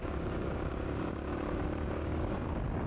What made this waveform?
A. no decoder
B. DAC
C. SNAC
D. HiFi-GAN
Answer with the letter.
B